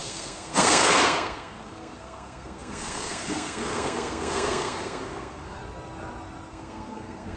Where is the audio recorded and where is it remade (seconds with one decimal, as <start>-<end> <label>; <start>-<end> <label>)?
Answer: 0.0-5.6 remade; 5.6-6.5 recorded; 6.5-7.4 remade